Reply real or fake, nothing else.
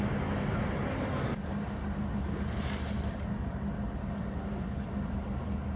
real